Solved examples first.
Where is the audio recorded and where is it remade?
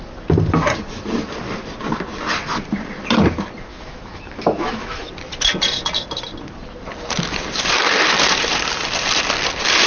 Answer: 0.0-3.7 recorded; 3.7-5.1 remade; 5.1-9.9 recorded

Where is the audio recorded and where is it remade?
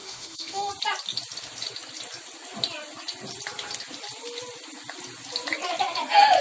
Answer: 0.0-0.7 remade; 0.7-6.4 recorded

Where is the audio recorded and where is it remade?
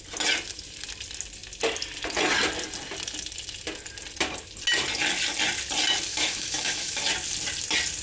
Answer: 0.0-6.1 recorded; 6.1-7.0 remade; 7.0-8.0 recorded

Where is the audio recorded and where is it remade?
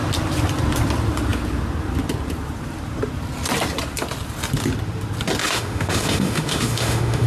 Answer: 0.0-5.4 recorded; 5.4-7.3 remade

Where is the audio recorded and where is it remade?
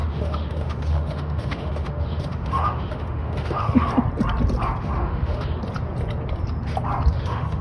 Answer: 0.0-3.9 remade; 3.9-4.8 recorded; 4.8-5.6 remade; 5.6-7.1 recorded; 7.1-7.6 remade